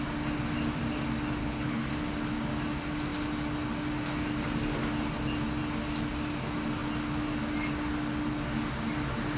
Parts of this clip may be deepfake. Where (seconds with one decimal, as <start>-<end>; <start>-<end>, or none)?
1.4-1.9